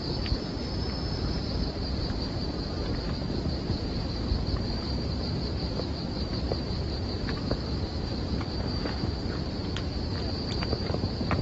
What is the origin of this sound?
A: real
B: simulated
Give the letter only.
B